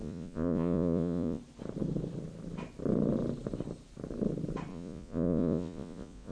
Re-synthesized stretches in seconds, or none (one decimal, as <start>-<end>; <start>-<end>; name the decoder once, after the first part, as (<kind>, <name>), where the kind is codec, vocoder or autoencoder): 0.0-1.4 (vocoder, Vocos); 4.7-6.3